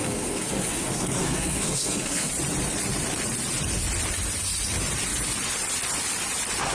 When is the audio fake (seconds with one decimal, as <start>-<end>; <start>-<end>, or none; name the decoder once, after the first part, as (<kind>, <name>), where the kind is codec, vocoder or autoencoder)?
0.0-2.3 (codec, SNAC)